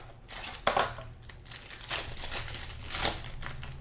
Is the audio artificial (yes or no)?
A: no